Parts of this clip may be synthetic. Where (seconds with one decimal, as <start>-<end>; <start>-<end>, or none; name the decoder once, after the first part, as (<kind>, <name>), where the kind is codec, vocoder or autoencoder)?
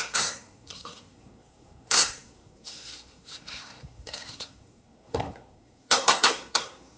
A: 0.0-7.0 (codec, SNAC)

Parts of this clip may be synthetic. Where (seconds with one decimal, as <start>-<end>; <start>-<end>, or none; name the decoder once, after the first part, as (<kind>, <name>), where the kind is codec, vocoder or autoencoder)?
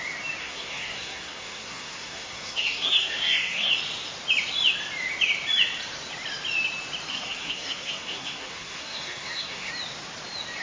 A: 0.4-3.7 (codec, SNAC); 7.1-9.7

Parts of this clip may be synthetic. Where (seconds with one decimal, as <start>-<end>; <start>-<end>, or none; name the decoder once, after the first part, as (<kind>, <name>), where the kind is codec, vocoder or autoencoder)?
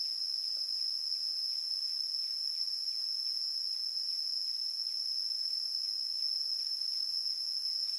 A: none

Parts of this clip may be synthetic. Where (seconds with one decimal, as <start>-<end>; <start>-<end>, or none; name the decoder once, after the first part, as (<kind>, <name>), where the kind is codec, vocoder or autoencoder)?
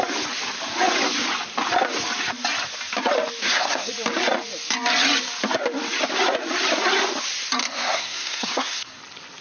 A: 3.4-3.9 (codec, SNAC); 7.6-9.0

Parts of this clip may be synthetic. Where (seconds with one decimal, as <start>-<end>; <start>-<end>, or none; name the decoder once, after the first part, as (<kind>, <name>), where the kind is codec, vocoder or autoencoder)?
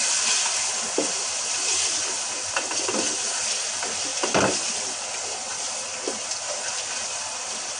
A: none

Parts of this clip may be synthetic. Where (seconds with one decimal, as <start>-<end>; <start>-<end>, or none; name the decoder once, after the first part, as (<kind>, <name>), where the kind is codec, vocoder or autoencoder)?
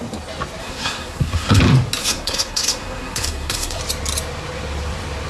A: 0.6-1.6 (codec, SNAC); 2.0-3.8